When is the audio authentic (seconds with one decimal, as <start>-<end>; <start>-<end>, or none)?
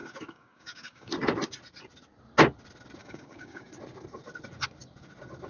1.1-3.0; 3.7-5.5